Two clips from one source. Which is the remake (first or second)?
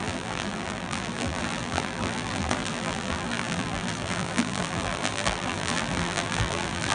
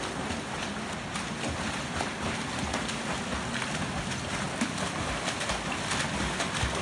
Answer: first